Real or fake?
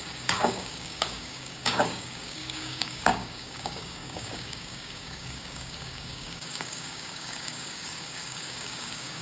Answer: fake